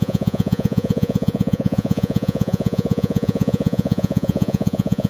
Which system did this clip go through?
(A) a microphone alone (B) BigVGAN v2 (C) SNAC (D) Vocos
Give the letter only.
D